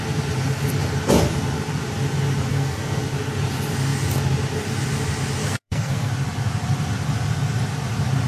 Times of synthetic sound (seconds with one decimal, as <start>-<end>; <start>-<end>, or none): 2.5-3.0; 5.4-6.1